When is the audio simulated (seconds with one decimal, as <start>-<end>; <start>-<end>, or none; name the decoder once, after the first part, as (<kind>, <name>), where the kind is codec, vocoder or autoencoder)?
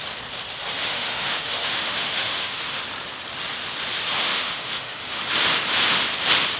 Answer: 0.8-2.8 (autoencoder, DAC-VAE); 4.2-5.2